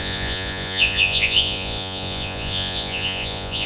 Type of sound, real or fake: fake